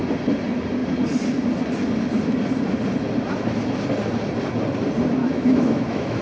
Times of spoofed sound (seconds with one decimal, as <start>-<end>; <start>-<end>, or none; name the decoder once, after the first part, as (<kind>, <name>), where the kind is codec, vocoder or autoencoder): 5.2-6.2 (autoencoder, DAC-VAE)